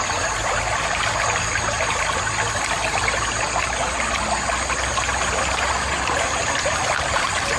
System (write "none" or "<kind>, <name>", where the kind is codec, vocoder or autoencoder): none